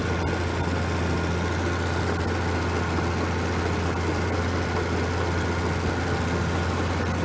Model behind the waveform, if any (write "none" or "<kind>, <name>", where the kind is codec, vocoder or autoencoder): none